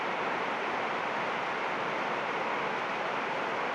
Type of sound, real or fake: real